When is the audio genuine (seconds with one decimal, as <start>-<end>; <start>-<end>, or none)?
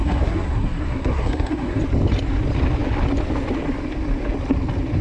1.8-5.0